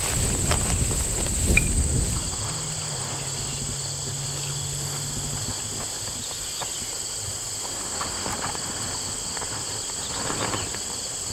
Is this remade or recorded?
recorded